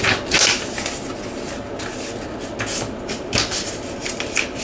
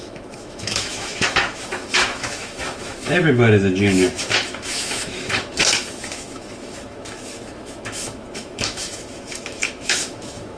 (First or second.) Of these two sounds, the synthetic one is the second